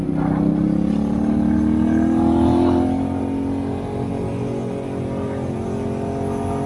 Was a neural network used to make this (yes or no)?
no